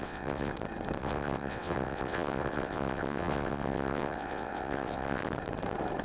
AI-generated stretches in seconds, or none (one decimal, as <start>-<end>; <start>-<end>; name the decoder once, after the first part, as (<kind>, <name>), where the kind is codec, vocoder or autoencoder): 0.0-0.5 (vocoder, WaveNeXt); 1.0-5.2